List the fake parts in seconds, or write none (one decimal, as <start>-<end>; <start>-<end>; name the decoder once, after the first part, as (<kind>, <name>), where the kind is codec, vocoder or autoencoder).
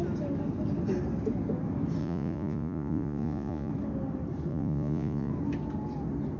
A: 2.0-3.7 (vocoder, Vocos); 4.5-5.3